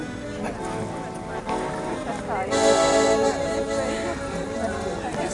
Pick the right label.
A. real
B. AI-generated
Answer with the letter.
A